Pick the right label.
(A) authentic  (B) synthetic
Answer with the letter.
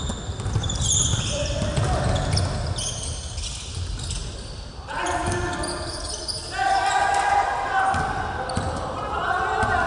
A